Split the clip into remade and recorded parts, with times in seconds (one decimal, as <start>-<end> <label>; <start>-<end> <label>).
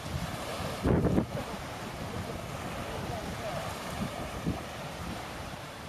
0.0-0.5 remade; 0.5-2.6 recorded; 2.6-5.9 remade